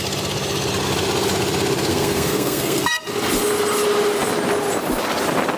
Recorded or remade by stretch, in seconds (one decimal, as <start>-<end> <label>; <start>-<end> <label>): 0.0-1.9 recorded; 1.9-3.0 remade; 3.0-5.6 recorded